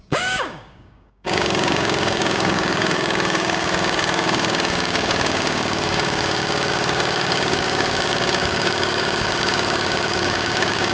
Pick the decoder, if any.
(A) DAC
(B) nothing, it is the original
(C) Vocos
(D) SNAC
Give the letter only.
A